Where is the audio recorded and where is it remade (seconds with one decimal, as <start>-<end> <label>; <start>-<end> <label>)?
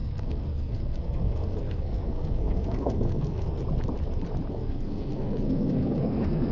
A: 0.0-3.6 remade; 3.6-4.5 recorded; 4.5-6.5 remade